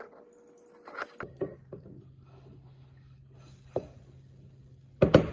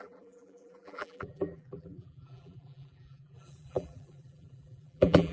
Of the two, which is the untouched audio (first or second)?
first